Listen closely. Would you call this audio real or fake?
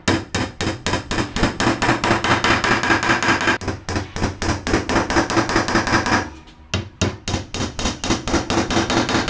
real